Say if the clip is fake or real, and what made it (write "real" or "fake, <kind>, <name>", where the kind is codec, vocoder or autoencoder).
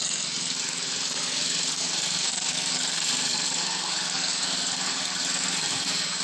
fake, codec, SNAC